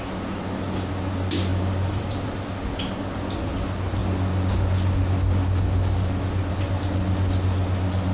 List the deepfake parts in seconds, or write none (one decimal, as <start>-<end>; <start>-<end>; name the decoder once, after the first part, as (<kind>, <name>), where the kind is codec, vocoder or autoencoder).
1.5-2.7 (vocoder, BigVGAN v2)